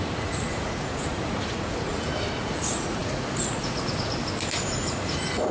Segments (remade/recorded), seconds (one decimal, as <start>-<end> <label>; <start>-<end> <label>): 0.0-1.9 remade; 1.9-2.4 recorded; 2.4-4.2 remade; 4.2-4.7 recorded; 4.7-5.5 remade